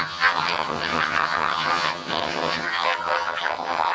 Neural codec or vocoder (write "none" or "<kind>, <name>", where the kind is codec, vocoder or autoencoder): vocoder, HiFi-GAN